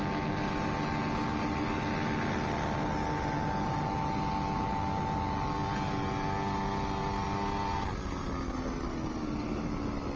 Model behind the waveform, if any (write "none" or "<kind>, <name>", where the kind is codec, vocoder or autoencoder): none